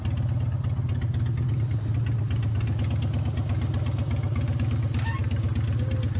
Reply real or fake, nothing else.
real